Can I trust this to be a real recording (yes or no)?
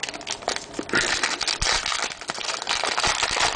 yes